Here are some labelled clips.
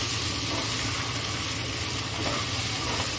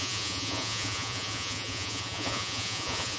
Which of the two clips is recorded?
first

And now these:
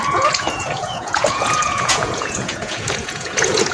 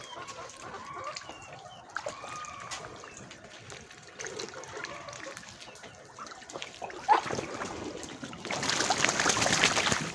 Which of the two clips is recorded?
second